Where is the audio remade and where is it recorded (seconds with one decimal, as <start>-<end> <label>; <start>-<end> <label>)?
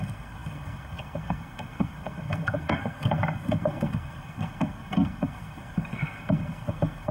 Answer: 0.0-7.1 remade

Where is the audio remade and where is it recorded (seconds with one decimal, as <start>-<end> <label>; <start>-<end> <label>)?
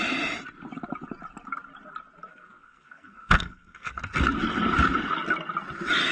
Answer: 0.0-2.3 recorded; 2.3-4.0 remade; 4.0-6.1 recorded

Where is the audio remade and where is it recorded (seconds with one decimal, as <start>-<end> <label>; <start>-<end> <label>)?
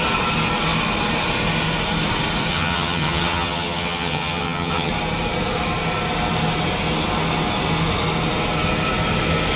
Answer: 0.0-2.5 recorded; 2.5-4.9 remade; 4.9-9.6 recorded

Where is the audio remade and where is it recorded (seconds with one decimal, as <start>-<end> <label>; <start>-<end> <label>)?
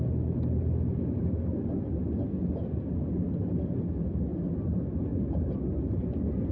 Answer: 0.0-6.5 recorded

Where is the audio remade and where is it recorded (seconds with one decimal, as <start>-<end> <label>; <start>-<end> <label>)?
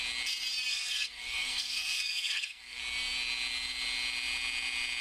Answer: 0.0-0.7 recorded; 0.7-2.8 remade; 2.8-5.0 recorded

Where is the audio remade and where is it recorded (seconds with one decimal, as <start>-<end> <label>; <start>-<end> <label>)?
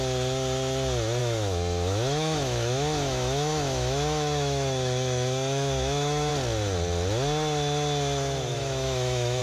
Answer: 0.0-1.2 recorded; 1.2-6.3 remade; 6.3-8.5 recorded; 8.5-9.4 remade